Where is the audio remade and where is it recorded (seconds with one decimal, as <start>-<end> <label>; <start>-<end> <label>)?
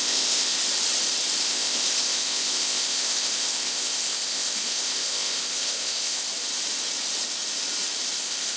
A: 0.0-0.6 remade; 0.6-1.4 recorded; 1.4-6.3 remade; 6.3-8.2 recorded; 8.2-8.6 remade